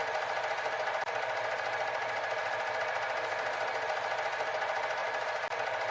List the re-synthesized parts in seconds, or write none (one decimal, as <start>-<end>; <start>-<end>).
none